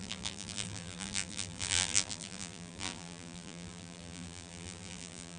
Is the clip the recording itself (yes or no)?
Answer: no